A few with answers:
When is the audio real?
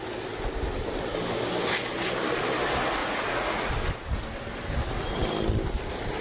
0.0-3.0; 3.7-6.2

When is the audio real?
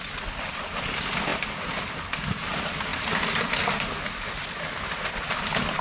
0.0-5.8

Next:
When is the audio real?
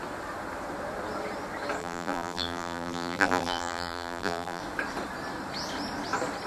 0.0-1.8; 4.6-6.5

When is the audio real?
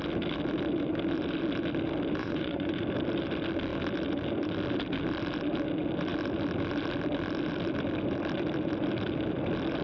0.0-2.2; 2.7-9.8